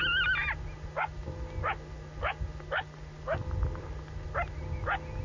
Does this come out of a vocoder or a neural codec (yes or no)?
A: no